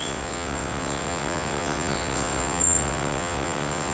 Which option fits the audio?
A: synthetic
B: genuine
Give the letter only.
A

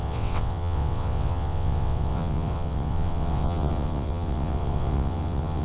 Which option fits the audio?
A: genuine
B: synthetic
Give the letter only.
B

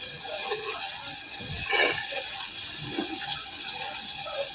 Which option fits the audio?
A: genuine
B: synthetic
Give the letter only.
B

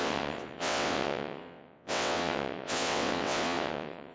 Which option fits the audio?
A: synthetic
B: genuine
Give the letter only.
A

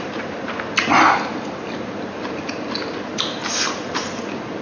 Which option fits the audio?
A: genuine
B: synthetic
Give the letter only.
A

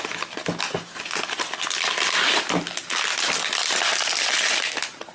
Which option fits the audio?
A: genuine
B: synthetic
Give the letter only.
A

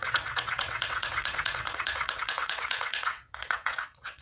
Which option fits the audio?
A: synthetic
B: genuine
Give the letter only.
A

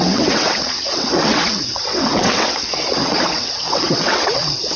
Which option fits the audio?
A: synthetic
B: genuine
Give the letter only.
A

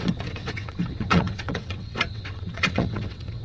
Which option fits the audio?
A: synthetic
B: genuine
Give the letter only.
A